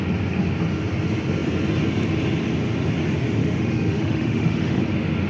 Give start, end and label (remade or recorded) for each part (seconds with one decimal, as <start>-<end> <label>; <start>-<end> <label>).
0.0-3.4 recorded; 3.4-4.8 remade; 4.8-5.3 recorded